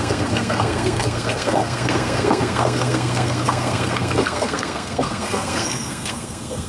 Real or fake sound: fake